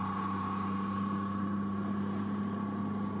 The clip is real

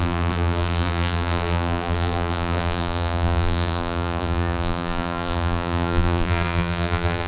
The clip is fake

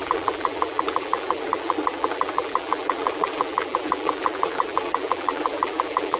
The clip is fake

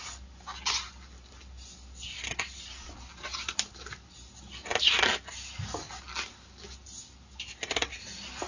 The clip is real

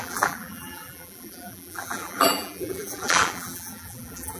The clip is fake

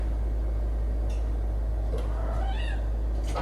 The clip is real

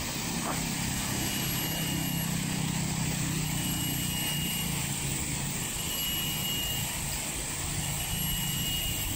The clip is real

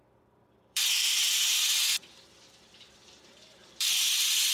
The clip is fake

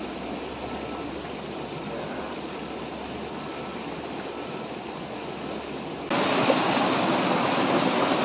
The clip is real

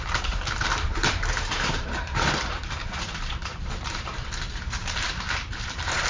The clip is fake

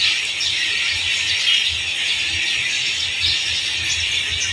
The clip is real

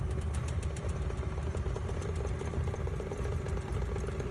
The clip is fake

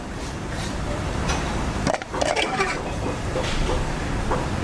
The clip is fake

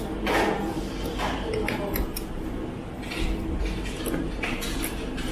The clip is real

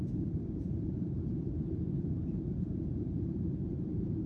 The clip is fake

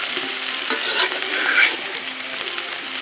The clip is fake